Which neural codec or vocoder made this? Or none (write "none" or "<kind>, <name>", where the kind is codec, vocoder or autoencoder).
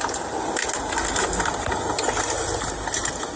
none